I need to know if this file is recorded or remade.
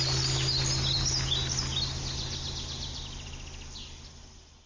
recorded